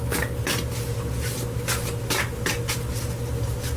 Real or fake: real